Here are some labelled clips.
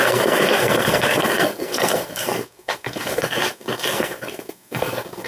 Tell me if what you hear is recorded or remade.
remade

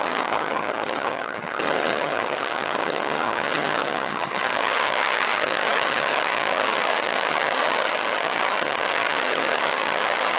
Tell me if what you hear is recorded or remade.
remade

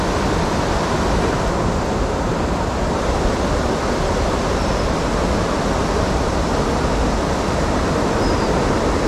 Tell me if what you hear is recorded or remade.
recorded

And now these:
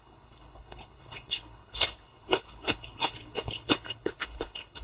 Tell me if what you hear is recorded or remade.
remade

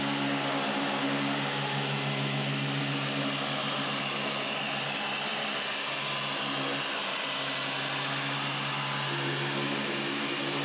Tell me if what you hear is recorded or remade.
recorded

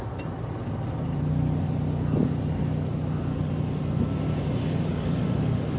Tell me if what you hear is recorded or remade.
recorded